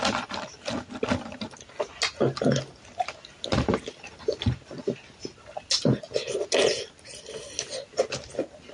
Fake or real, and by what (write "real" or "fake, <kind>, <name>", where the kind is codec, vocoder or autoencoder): real